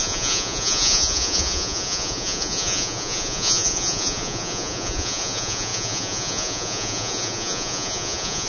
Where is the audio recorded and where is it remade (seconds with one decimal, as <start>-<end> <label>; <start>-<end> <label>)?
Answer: 0.0-8.5 remade